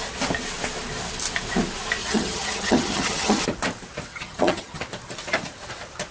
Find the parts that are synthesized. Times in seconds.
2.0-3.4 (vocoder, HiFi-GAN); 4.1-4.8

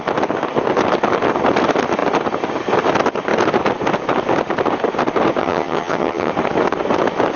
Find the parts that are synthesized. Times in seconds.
5.4-6.3 (vocoder, HiFi-GAN)

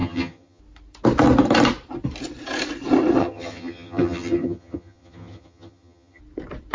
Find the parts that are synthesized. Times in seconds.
0.0-0.6 (vocoder, HiFi-GAN); 3.2-6.2

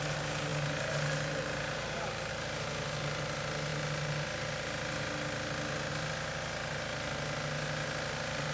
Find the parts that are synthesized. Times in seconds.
none

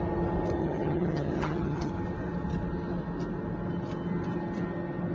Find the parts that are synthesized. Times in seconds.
0.6-1.9 (vocoder, HiFi-GAN)

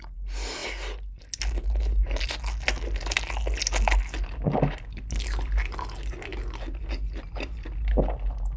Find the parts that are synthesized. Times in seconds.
none

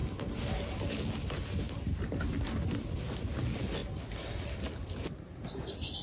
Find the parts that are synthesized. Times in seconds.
none

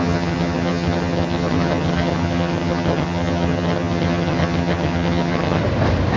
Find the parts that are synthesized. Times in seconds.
0.0-5.6 (vocoder, HiFi-GAN)